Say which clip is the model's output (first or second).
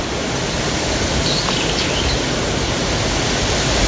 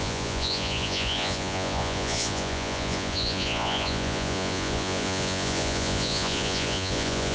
second